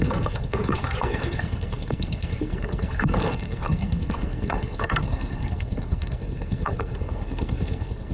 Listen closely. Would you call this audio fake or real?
fake